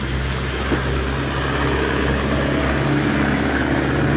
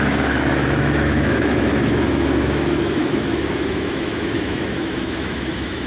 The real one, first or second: first